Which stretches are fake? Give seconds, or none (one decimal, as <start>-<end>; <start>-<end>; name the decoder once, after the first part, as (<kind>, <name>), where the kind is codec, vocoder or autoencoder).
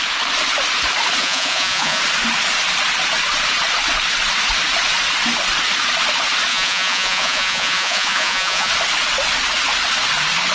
1.2-2.0 (vocoder, Vocos); 6.5-8.7